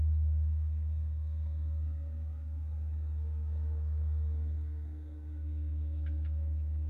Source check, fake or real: fake